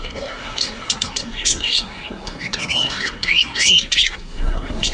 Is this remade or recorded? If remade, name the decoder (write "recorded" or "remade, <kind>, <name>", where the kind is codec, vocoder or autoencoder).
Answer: remade, codec, SNAC